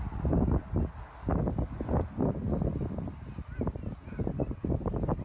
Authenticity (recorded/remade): recorded